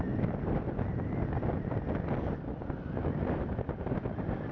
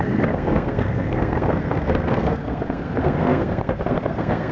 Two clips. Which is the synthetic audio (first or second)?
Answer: second